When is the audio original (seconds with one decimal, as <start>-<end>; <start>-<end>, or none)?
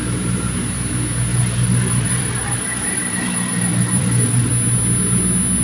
0.0-1.3; 4.5-5.6